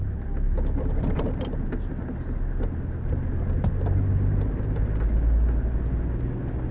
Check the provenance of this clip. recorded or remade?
recorded